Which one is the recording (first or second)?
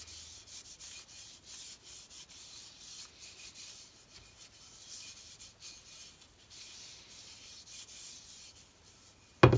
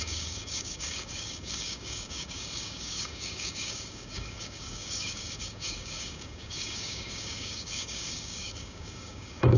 first